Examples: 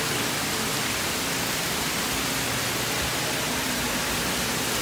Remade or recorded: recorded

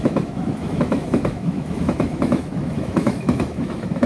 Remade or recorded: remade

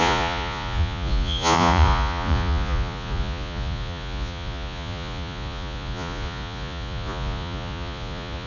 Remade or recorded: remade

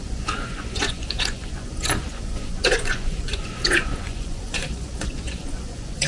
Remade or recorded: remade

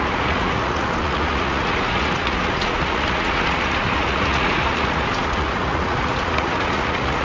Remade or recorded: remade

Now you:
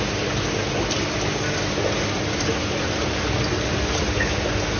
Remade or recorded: recorded